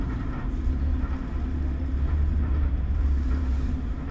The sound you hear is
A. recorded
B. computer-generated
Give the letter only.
B